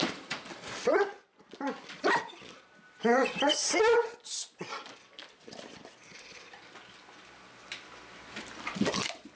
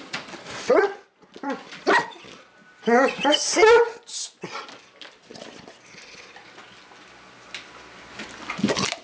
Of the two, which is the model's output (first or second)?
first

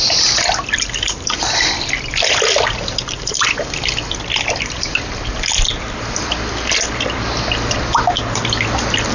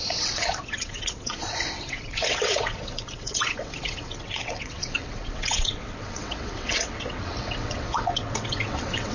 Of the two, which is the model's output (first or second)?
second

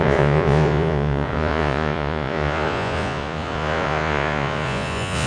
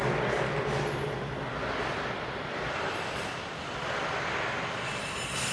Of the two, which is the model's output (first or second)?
first